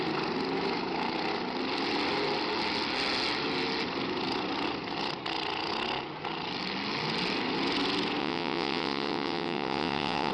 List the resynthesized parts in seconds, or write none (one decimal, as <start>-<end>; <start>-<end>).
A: 8.2-10.3